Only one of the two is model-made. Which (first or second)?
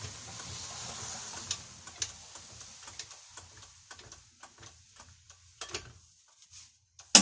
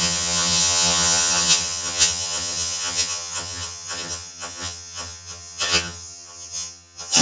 second